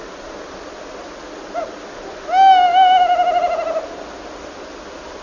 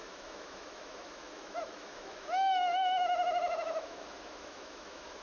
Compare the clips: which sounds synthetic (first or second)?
second